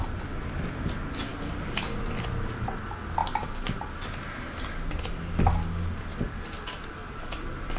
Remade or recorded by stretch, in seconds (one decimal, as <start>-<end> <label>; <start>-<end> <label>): 0.0-7.8 recorded